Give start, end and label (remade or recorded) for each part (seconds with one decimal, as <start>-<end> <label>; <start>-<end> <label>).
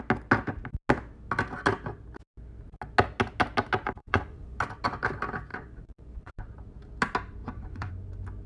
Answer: 0.0-4.0 recorded; 4.0-4.6 remade; 4.6-5.5 recorded; 5.5-6.3 remade; 6.3-7.4 recorded; 7.4-7.9 remade; 7.9-8.5 recorded